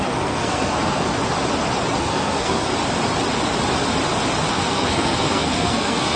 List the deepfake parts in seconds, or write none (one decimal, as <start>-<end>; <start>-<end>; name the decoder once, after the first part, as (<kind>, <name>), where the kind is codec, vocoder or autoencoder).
0.0-1.1 (codec, SNAC); 2.0-2.7; 4.5-6.2